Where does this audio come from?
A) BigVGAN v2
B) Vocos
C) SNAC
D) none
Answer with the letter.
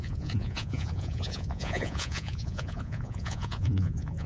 B